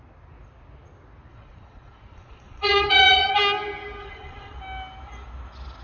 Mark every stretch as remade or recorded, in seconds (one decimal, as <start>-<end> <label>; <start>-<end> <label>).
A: 0.0-1.3 recorded; 1.3-3.3 remade; 3.3-4.0 recorded; 4.0-4.6 remade; 4.6-5.8 recorded